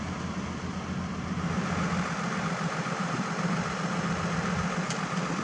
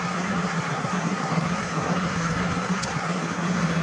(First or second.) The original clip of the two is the first